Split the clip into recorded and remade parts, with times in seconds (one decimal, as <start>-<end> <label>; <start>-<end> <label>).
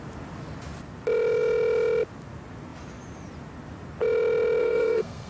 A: 0.0-4.6 recorded; 4.6-5.3 remade